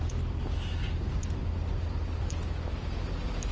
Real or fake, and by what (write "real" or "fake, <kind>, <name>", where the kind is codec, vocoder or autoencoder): real